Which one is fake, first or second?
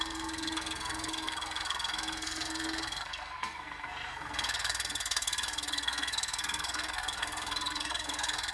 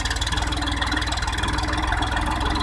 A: first